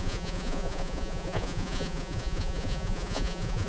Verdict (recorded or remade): remade